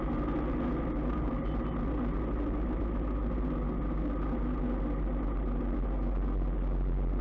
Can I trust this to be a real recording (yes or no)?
yes